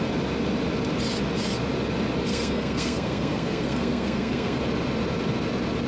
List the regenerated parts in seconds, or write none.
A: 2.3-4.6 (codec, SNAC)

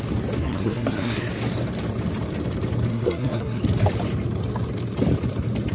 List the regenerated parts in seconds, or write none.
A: 0.4-1.3 (codec, SNAC); 2.9-3.6